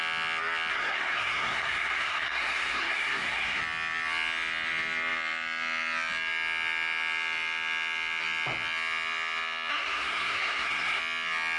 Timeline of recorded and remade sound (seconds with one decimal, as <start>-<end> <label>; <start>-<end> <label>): 0.0-0.7 recorded; 0.7-3.6 remade; 3.6-9.7 recorded; 9.7-11.0 remade; 11.0-11.6 recorded